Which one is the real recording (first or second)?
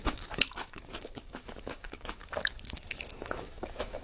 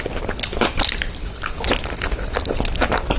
second